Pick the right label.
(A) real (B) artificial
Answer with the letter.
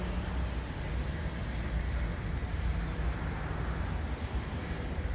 A